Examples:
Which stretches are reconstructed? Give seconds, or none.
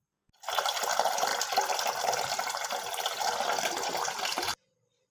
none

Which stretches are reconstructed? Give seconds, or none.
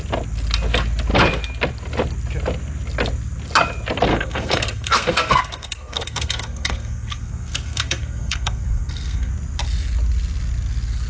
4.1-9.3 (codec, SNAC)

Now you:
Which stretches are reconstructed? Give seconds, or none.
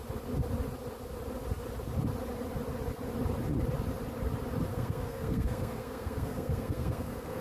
4.7-7.4 (codec, SNAC)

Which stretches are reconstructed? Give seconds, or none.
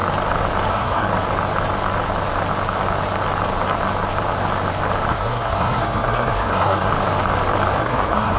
0.7-1.1 (codec, SNAC); 5.1-6.9; 7.8-8.4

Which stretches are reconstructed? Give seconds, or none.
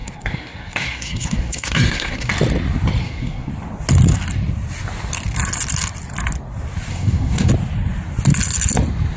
0.0-2.3 (codec, SNAC); 3.0-3.5; 6.9-7.5